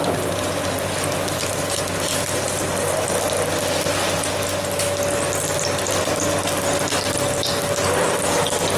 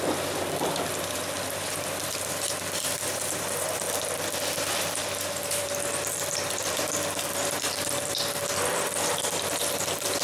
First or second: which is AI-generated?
second